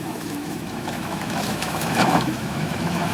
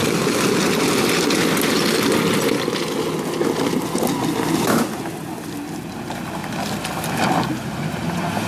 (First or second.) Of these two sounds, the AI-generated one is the first